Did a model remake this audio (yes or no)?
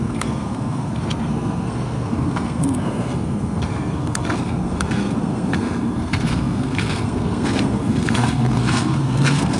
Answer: yes